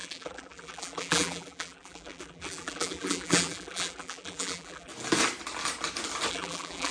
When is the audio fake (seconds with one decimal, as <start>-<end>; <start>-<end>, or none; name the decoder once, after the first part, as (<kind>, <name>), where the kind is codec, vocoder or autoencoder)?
0.0-4.9 (vocoder, BigVGAN v2); 6.3-6.9